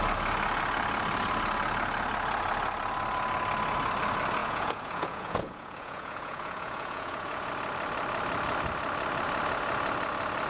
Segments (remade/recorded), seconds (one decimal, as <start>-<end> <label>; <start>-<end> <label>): 0.0-4.4 recorded; 4.4-7.5 remade; 7.5-10.5 recorded